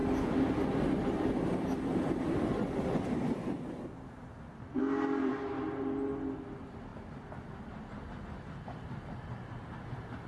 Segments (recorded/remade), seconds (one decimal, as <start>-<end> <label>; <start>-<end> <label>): 0.0-10.3 recorded